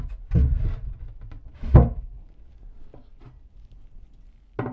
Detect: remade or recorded recorded